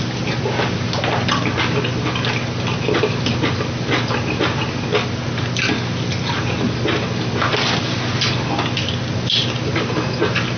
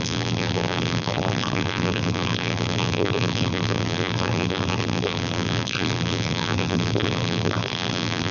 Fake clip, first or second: second